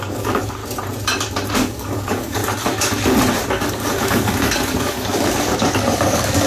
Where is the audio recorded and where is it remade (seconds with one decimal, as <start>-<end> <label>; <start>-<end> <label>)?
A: 0.0-0.6 remade; 0.6-1.5 recorded; 1.5-2.4 remade; 2.4-3.7 recorded; 3.7-6.5 remade